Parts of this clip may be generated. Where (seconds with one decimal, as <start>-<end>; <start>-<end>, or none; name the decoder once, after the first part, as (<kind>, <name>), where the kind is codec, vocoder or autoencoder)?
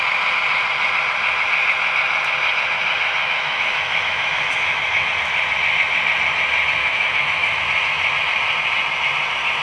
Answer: 3.2-5.1 (autoencoder, DAC-VAE); 6.8-7.6